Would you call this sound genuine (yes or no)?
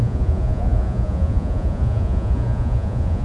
no